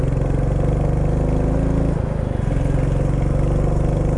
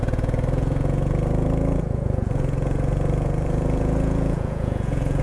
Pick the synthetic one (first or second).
second